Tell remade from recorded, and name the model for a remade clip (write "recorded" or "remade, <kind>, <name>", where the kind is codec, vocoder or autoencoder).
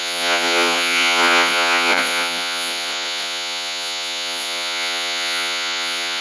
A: remade, vocoder, Vocos